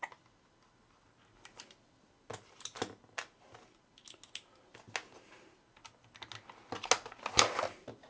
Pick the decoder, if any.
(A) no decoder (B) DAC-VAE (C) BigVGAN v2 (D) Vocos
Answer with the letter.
A